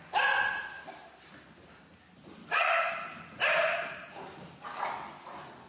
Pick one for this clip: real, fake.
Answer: real